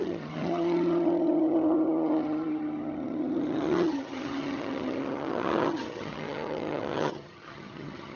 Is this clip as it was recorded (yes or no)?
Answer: no